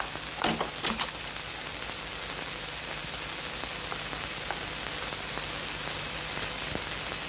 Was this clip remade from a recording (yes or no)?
no